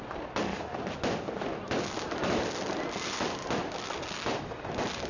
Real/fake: real